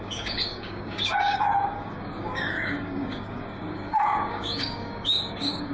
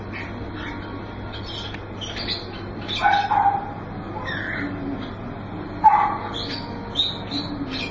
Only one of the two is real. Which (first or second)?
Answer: second